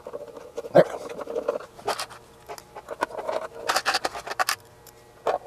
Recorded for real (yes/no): yes